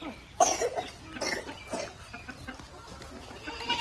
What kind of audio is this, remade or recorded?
recorded